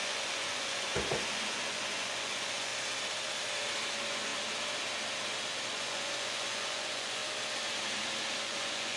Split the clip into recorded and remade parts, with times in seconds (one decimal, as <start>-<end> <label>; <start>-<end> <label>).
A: 0.0-2.7 remade; 2.7-3.9 recorded; 3.9-4.3 remade; 4.3-5.7 recorded; 5.7-7.2 remade; 7.2-8.4 recorded; 8.4-9.0 remade